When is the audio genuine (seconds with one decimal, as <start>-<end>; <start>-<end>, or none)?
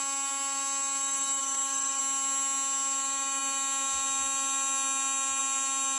0.0-1.4; 2.0-6.0